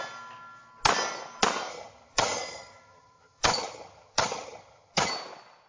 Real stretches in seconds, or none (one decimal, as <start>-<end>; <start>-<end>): 0.0-1.7; 5.1-5.7